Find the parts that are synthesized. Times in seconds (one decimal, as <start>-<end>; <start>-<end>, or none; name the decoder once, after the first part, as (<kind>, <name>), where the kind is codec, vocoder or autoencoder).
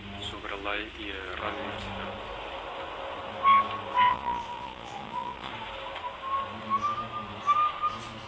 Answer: 4.1-5.5 (vocoder, Vocos)